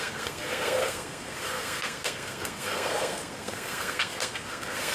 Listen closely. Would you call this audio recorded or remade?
remade